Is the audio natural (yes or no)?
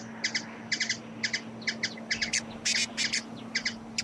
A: yes